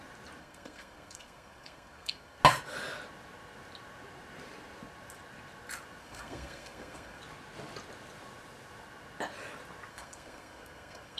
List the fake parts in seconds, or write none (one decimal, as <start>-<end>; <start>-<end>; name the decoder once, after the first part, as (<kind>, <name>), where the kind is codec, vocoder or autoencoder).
0.4-2.4 (codec, SNAC); 6.0-7.2; 9.9-11.2